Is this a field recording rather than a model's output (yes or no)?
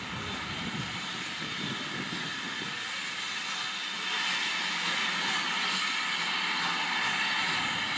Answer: yes